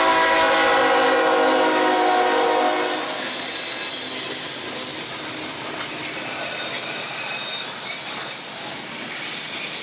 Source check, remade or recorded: recorded